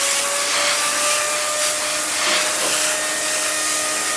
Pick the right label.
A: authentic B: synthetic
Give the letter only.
A